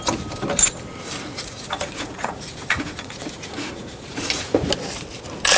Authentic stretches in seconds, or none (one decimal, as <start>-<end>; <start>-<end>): 0.0-1.3; 4.7-5.6